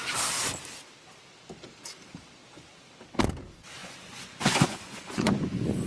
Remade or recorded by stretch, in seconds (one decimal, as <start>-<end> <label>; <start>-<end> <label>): 0.0-3.8 recorded; 3.8-5.9 remade